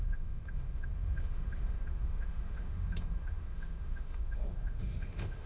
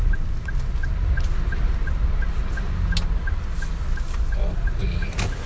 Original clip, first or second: second